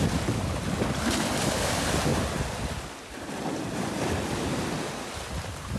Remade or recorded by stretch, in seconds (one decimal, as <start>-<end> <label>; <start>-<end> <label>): 0.0-5.8 recorded